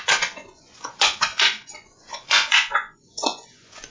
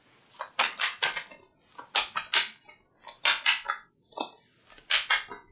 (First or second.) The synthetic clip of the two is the first